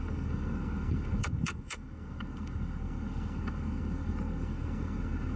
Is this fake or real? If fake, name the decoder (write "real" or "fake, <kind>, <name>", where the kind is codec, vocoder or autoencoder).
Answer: fake, codec, SNAC